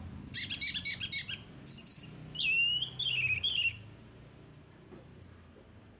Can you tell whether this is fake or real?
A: real